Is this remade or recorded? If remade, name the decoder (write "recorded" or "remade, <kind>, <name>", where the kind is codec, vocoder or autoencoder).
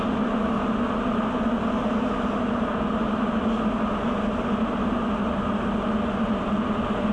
recorded